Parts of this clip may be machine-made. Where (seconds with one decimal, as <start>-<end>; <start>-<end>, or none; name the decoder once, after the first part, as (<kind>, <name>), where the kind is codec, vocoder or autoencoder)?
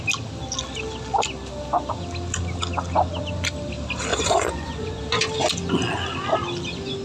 4.1-5.0 (vocoder, Vocos)